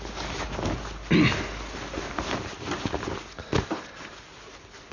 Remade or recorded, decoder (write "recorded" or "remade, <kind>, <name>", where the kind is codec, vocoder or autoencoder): recorded